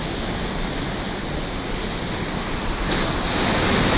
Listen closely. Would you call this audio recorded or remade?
recorded